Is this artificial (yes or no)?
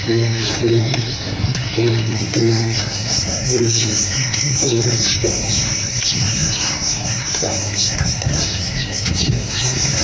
yes